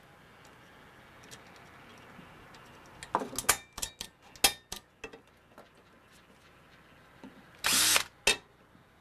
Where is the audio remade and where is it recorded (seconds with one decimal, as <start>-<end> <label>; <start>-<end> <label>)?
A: 0.0-9.0 recorded